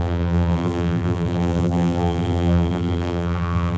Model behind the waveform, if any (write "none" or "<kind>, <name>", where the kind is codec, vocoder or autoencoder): vocoder, BigVGAN v2